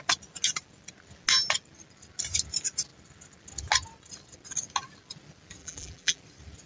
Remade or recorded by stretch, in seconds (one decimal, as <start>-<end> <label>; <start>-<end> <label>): 0.0-5.6 recorded; 5.6-6.2 remade; 6.2-6.7 recorded